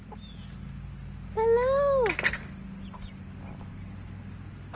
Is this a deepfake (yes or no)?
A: no